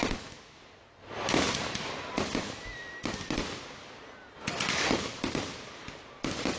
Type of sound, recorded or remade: recorded